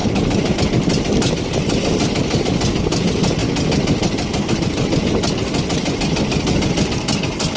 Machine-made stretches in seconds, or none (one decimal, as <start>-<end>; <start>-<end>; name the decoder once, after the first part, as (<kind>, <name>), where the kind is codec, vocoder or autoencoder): none